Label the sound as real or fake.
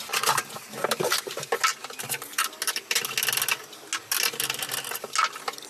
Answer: real